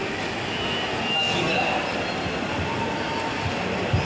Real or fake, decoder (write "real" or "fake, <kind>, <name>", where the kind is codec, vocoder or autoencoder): real